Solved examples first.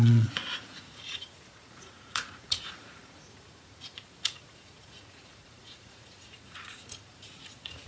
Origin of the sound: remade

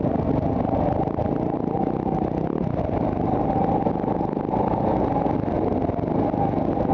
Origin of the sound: recorded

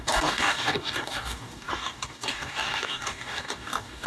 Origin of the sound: remade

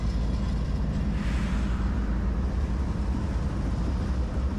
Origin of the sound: recorded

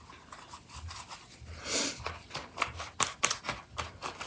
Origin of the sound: recorded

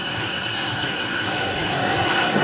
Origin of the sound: remade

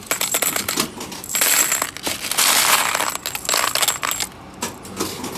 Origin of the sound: recorded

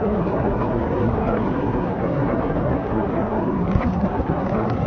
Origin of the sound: remade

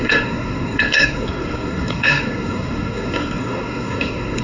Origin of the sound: remade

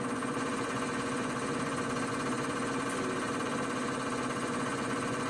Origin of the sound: remade